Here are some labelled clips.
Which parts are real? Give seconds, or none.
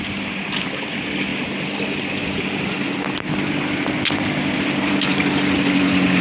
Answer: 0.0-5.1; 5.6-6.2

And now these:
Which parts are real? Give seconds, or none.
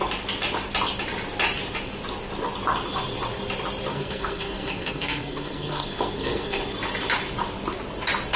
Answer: 0.0-3.9; 6.6-8.4